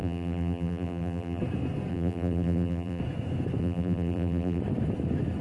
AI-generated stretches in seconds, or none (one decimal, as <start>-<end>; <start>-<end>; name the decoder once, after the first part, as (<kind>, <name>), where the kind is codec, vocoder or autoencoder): 0.0-1.4 (vocoder, BigVGAN v2); 1.9-3.0; 3.6-4.6